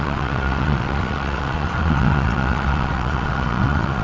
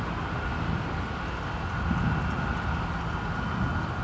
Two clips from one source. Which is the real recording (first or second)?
second